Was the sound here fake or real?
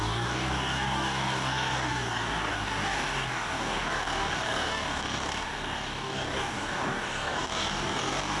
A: fake